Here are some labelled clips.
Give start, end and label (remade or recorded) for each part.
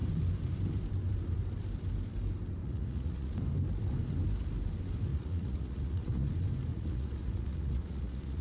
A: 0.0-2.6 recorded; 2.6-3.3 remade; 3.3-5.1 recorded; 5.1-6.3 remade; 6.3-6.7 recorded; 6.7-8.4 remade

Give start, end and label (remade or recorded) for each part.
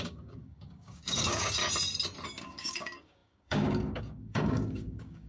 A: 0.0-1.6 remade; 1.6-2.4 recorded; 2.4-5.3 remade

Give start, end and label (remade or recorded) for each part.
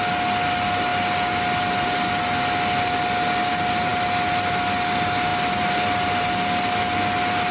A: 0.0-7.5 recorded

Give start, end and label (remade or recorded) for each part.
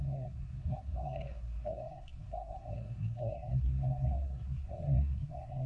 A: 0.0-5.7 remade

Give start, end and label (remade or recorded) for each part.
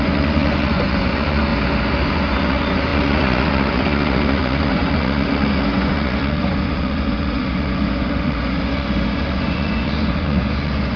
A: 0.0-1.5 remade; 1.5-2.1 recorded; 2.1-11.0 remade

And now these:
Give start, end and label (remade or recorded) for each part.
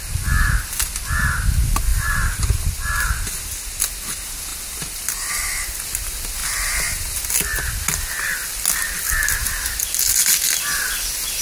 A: 0.0-1.9 recorded; 1.9-3.8 remade; 3.8-4.5 recorded; 4.5-5.3 remade; 5.3-6.4 recorded; 6.4-7.4 remade; 7.4-11.4 recorded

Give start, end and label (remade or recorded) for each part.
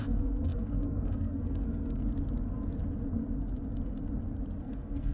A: 0.0-2.0 remade; 2.0-4.6 recorded; 4.6-5.1 remade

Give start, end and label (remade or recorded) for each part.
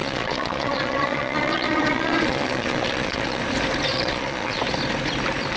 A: 0.0-3.4 remade; 3.4-3.9 recorded; 3.9-4.6 remade; 4.6-5.6 recorded